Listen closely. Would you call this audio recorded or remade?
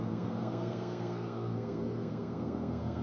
remade